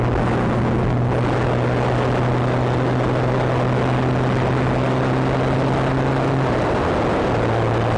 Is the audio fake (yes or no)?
no